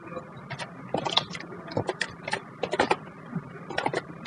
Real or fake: real